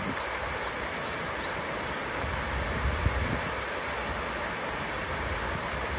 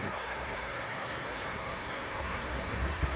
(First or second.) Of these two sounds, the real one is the first